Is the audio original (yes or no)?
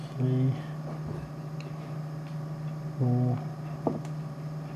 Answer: yes